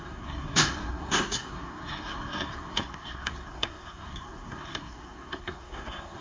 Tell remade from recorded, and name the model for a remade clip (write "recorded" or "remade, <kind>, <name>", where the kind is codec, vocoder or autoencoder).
remade, codec, SNAC